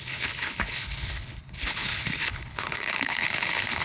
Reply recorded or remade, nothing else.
remade